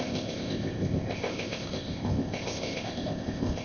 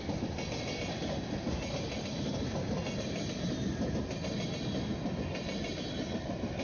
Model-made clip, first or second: first